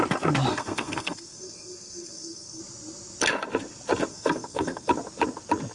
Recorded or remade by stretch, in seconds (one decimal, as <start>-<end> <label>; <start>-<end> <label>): 0.0-0.5 recorded; 0.5-2.6 remade; 2.6-4.1 recorded; 4.1-4.9 remade; 4.9-5.7 recorded